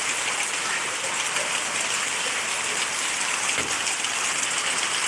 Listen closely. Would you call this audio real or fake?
real